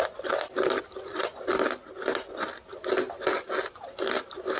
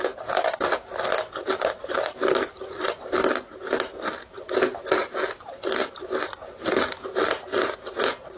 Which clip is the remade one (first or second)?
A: first